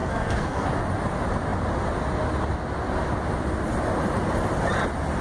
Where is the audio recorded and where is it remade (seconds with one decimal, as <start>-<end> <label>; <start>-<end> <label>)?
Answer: 0.0-0.7 remade; 0.7-5.2 recorded